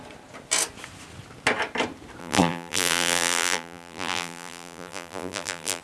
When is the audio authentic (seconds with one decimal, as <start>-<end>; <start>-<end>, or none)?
0.0-2.2